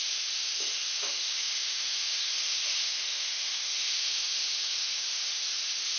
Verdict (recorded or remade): remade